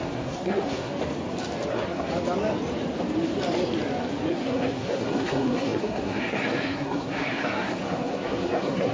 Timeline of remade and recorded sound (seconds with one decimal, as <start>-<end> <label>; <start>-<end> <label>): 0.0-0.9 remade; 0.9-1.7 recorded; 1.7-2.1 remade; 2.1-4.3 recorded; 4.3-8.9 remade